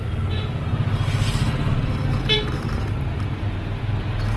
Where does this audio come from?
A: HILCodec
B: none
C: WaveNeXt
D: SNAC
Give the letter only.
B